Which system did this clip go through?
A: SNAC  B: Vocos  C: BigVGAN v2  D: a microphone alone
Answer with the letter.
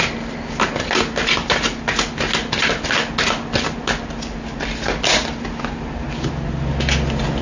D